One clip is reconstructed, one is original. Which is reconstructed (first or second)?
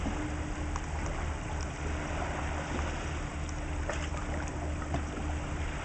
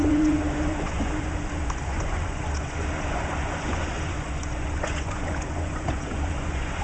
second